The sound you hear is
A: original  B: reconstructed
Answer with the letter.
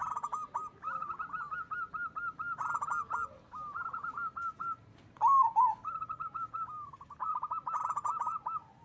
A